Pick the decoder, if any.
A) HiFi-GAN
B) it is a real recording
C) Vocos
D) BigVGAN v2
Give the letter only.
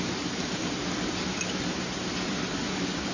D